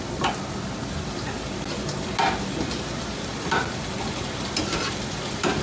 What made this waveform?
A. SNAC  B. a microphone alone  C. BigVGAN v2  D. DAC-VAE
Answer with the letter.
B